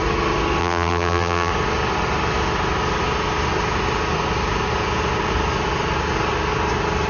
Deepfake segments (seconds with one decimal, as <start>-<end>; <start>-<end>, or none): 0.6-1.5